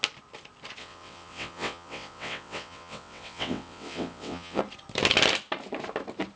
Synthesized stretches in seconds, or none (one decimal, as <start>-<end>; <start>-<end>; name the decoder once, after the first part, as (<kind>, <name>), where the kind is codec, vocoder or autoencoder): 0.8-4.6 (vocoder, WaveNeXt)